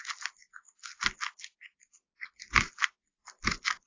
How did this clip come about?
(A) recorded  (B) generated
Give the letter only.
A